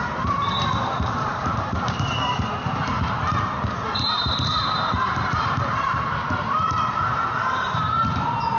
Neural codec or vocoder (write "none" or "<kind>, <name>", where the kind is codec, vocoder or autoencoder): vocoder, BigVGAN v2